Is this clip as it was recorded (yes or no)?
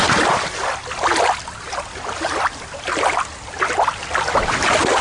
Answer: yes